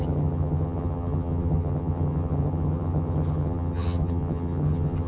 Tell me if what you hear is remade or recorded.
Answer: remade